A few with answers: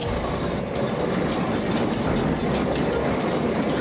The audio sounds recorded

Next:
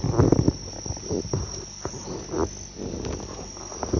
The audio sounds recorded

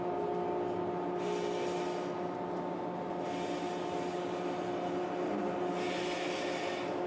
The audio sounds recorded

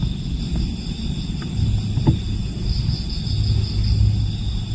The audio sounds recorded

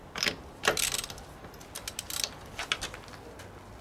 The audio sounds recorded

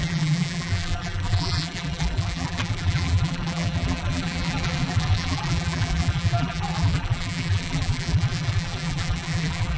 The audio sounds remade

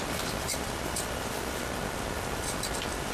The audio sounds remade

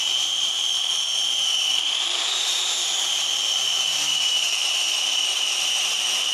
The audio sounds remade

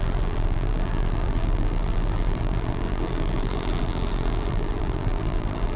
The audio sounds remade